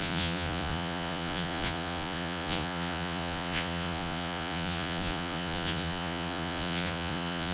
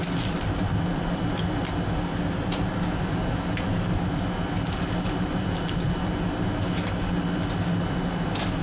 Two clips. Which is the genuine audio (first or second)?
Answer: second